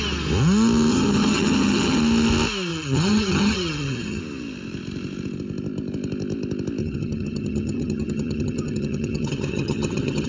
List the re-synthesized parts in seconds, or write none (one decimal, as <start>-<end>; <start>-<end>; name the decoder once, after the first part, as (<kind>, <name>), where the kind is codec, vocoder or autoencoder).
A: 0.9-2.0 (vocoder, HiFi-GAN); 2.7-4.2; 6.8-10.3

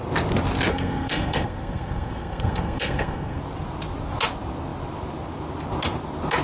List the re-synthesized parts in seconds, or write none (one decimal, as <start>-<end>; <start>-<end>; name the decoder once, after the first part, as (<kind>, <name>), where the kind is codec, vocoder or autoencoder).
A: 0.7-3.4 (codec, SNAC)

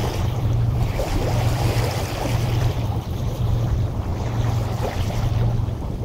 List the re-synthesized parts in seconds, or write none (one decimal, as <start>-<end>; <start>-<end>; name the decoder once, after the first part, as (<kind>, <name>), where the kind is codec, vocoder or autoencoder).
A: 0.0-4.1 (vocoder, BigVGAN v2); 4.8-6.0

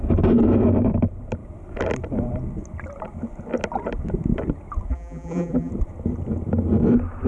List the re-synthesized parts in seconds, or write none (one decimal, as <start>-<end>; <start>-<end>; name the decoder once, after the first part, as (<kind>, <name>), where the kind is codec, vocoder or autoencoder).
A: 4.9-5.7 (vocoder, BigVGAN v2)

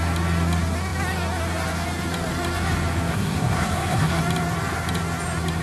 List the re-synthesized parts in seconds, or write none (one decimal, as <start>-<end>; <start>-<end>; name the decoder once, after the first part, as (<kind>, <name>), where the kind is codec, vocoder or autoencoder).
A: 3.1-4.2 (codec, SNAC)

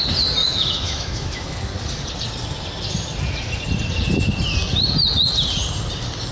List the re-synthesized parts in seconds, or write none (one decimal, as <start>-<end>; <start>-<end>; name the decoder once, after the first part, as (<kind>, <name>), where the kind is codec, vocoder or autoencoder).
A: 0.4-1.6 (autoencoder, DAC-VAE)

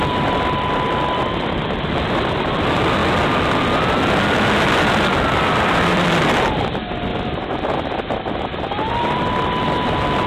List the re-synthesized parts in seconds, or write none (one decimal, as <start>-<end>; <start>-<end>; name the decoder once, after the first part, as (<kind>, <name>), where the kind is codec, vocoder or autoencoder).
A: 0.0-3.0 (vocoder, BigVGAN v2); 4.4-7.1; 8.9-10.3